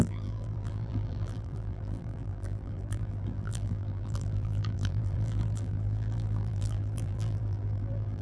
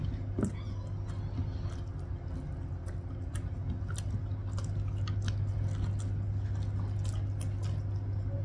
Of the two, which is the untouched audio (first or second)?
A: second